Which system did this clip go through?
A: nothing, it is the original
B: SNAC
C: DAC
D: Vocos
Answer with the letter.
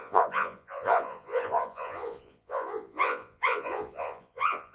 D